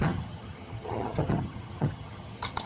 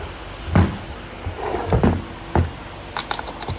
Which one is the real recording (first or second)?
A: second